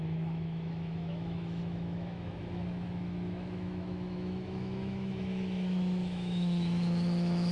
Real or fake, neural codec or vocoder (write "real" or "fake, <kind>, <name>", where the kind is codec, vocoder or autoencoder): fake, autoencoder, DAC-VAE